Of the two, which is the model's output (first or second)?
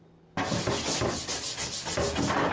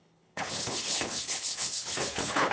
second